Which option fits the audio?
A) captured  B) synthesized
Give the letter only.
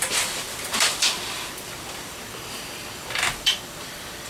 B